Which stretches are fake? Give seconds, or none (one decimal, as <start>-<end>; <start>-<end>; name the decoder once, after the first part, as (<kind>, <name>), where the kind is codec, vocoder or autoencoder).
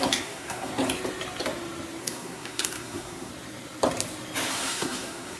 0.0-0.7 (codec, SNAC); 2.0-3.3; 4.5-5.4